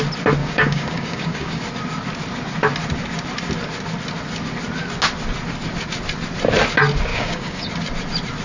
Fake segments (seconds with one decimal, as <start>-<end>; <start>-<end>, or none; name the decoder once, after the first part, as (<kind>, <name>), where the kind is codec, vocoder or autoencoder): 0.4-1.6 (codec, DAC); 7.1-7.7